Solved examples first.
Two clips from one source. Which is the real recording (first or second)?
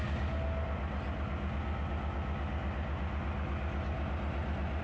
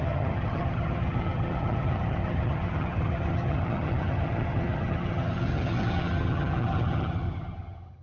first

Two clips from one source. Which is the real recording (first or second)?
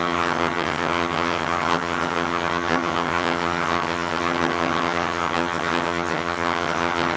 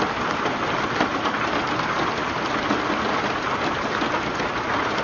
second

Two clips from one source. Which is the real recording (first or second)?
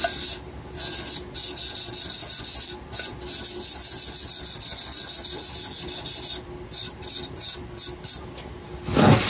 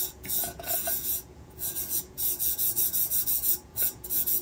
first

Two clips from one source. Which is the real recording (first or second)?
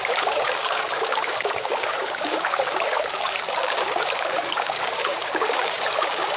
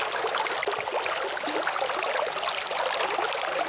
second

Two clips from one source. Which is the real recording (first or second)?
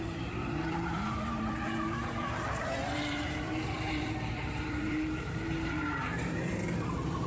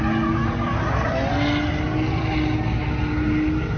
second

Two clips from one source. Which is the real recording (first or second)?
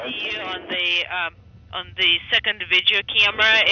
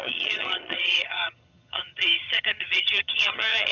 first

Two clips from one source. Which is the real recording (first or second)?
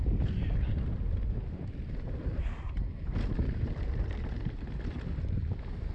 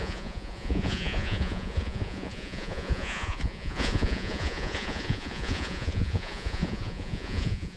first